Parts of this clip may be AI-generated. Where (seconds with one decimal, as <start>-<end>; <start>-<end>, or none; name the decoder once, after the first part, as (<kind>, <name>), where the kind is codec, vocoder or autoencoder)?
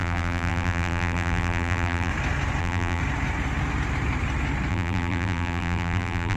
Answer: 0.0-2.1 (vocoder, BigVGAN v2); 2.6-3.0; 4.7-6.4